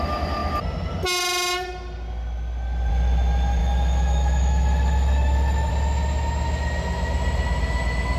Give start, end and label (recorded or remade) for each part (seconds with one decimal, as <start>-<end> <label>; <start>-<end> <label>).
0.0-3.6 recorded; 3.6-5.7 remade; 5.7-8.2 recorded